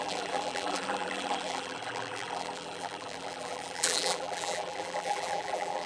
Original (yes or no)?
no